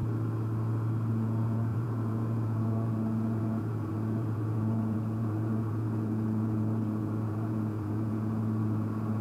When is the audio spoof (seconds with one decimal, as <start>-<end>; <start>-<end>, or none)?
1.1-9.2